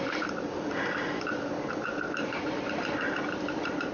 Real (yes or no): no